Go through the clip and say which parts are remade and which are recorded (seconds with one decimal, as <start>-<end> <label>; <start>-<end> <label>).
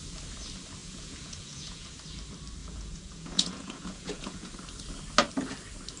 0.0-0.8 recorded; 0.8-1.9 remade; 1.9-2.6 recorded; 2.6-4.5 remade; 4.5-6.0 recorded